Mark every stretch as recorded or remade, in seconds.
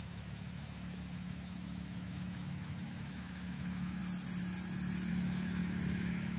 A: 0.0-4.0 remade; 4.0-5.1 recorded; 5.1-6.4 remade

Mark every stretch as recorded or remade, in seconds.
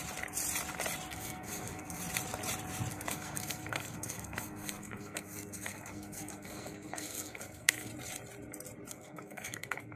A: 0.0-1.1 recorded; 1.1-2.0 remade; 2.0-2.9 recorded; 2.9-7.9 remade; 7.9-8.9 recorded; 8.9-10.0 remade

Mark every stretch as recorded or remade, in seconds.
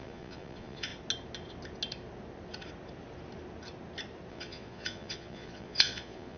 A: 0.0-0.9 remade; 0.9-4.3 recorded; 4.3-6.4 remade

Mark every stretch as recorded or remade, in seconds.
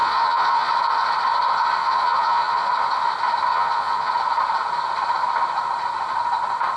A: 0.0-0.7 remade; 0.7-1.8 recorded; 1.8-2.7 remade; 2.7-3.5 recorded; 3.5-4.1 remade; 4.1-6.8 recorded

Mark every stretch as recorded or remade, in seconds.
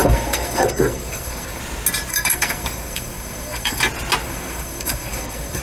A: 0.0-1.6 remade; 1.6-2.1 recorded; 2.1-3.8 remade; 3.8-4.2 recorded; 4.2-5.6 remade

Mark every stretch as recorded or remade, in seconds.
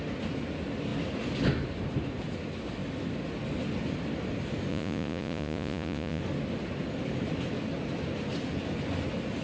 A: 0.0-4.7 recorded; 4.7-6.2 remade; 6.2-9.4 recorded